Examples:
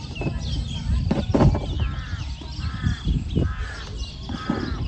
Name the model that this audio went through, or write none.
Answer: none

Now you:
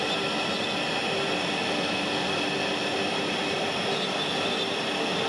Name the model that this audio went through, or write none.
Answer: none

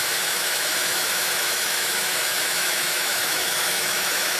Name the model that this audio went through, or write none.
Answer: autoencoder, DAC-VAE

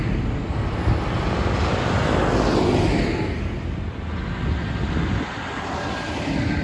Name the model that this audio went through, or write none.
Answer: none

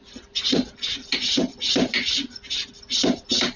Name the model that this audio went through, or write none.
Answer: none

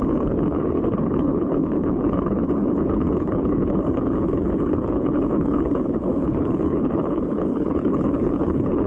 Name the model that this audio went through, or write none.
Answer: codec, HILCodec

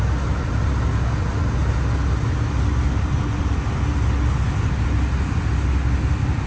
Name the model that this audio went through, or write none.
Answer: none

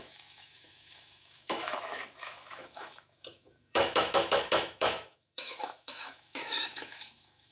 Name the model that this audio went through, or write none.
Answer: autoencoder, DAC-VAE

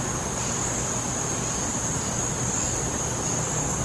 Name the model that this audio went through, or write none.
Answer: none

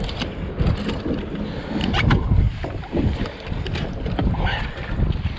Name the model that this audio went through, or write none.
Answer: none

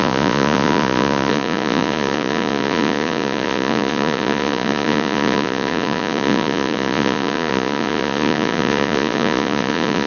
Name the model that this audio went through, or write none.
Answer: vocoder, Vocos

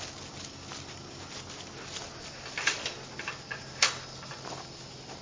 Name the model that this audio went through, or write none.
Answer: none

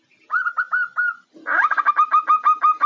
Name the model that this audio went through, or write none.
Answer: none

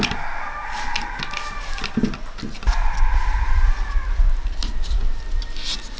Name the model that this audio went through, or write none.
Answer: none